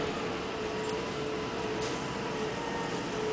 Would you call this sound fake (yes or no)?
no